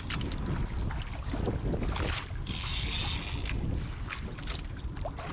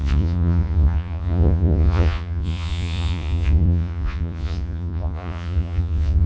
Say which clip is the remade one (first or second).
second